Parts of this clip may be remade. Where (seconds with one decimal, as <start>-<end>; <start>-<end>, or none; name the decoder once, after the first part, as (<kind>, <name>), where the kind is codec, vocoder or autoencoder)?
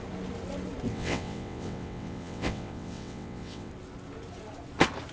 0.9-3.7 (vocoder, WaveNeXt)